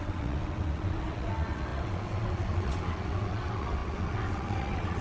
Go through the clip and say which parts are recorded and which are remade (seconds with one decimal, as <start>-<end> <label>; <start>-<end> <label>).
0.0-5.0 remade